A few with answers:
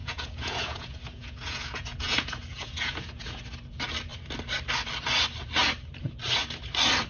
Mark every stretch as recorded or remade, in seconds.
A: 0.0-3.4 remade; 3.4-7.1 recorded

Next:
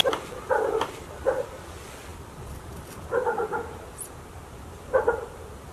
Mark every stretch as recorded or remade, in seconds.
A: 0.0-5.7 recorded

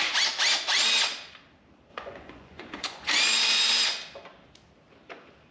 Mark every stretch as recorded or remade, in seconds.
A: 0.0-1.9 recorded; 1.9-3.1 remade; 3.1-5.5 recorded

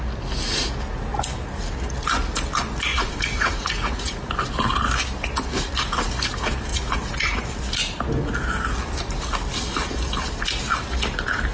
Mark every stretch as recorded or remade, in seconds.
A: 0.0-2.9 recorded; 2.9-4.3 remade; 4.3-6.7 recorded; 6.7-7.5 remade; 7.5-11.5 recorded